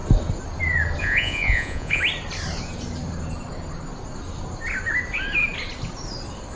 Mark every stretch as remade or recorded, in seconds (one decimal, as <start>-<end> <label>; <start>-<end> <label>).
0.0-1.0 recorded; 1.0-2.0 remade; 2.0-6.6 recorded